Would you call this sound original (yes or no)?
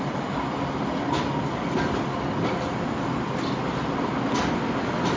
yes